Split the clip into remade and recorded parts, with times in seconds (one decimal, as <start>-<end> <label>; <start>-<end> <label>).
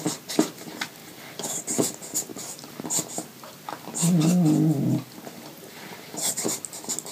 0.0-7.1 recorded